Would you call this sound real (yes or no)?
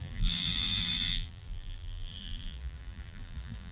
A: no